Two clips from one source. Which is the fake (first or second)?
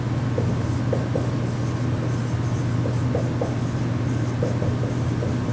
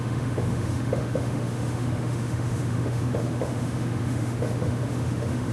second